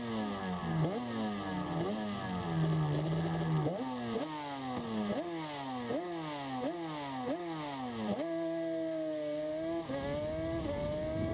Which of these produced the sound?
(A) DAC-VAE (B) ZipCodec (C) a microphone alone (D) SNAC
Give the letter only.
C